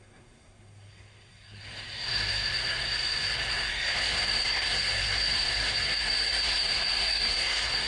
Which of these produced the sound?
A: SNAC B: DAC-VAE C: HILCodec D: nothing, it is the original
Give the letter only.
A